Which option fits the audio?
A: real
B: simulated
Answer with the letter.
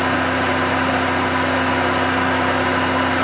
A